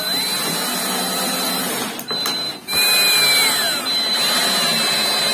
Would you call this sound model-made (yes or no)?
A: no